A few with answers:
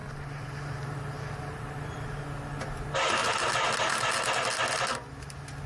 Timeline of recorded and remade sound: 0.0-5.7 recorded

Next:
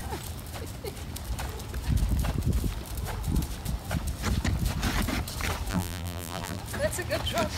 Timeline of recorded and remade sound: 0.0-5.7 recorded; 5.7-6.6 remade; 6.6-7.6 recorded

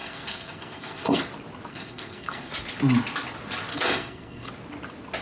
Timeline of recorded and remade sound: 0.0-1.2 remade; 1.2-1.7 recorded; 1.7-2.5 remade; 2.5-3.7 recorded; 3.7-4.5 remade; 4.5-5.2 recorded

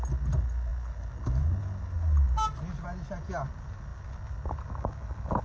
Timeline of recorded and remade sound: 0.0-5.4 recorded

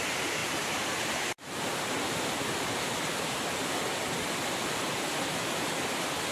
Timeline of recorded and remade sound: 0.0-0.4 recorded; 0.4-2.6 remade; 2.6-6.3 recorded

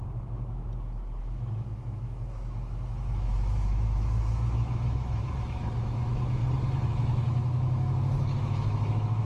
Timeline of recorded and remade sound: 0.0-0.6 remade; 0.6-1.2 recorded; 1.2-6.4 remade; 6.4-6.9 recorded; 6.9-9.2 remade

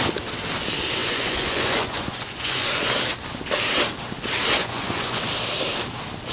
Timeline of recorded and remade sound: 0.0-1.0 recorded; 1.0-3.0 remade; 3.0-4.6 recorded; 4.6-5.3 remade; 5.3-6.3 recorded

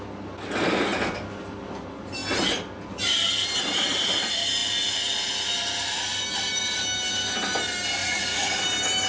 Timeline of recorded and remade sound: 0.0-8.0 recorded; 8.0-8.6 remade; 8.6-9.1 recorded